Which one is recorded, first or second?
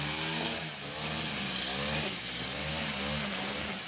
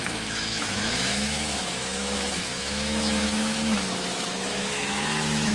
first